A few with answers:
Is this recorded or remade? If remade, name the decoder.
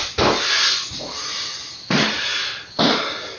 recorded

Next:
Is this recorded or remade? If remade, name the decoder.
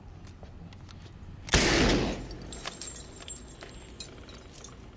recorded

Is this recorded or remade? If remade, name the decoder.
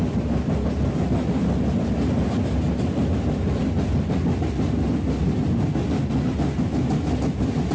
recorded